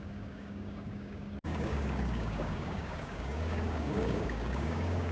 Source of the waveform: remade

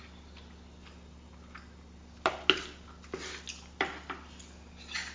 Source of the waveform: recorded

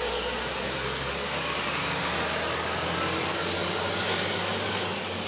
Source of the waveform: remade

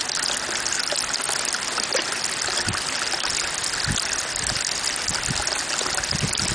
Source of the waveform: recorded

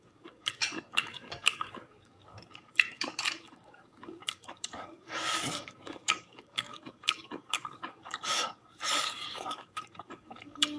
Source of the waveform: remade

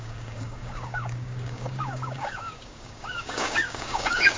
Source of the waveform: remade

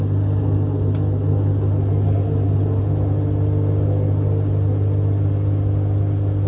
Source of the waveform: recorded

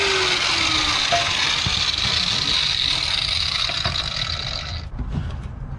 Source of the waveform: recorded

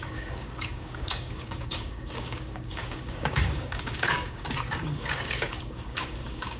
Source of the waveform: remade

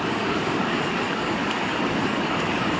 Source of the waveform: remade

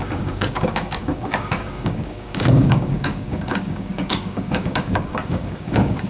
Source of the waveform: remade